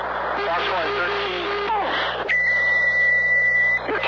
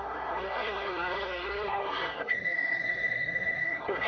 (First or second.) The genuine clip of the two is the first